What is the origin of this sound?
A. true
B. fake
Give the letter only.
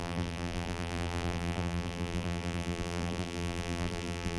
B